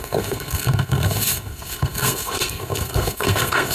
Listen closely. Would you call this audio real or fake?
fake